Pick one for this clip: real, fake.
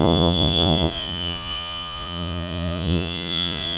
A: fake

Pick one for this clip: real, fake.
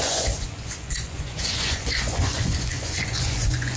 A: fake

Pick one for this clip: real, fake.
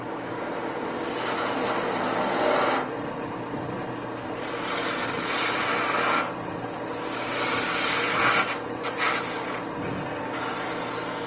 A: real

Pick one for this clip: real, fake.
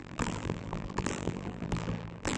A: fake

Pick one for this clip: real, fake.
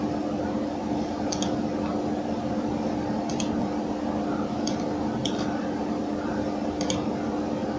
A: real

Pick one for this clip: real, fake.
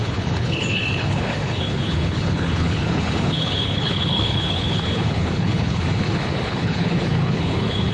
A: fake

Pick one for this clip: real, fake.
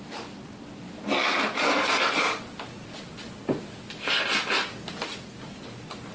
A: real